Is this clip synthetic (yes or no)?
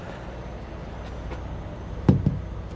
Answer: no